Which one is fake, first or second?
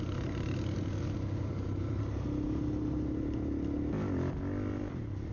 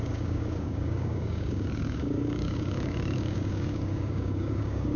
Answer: second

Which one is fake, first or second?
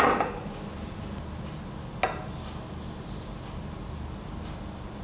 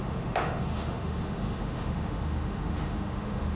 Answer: second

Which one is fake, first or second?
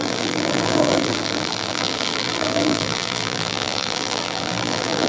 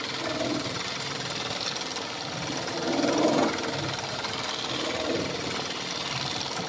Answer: first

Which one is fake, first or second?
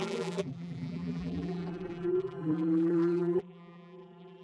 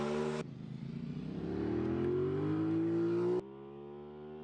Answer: first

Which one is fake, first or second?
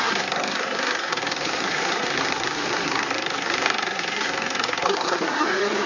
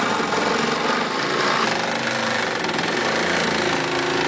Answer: first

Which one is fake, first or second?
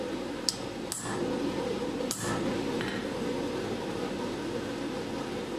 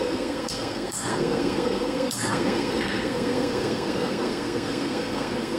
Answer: second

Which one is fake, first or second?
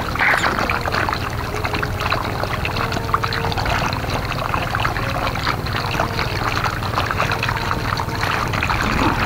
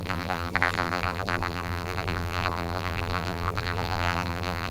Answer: second